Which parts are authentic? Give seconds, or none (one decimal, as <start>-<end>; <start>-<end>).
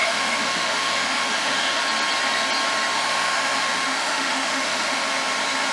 1.8-2.9; 5.0-5.7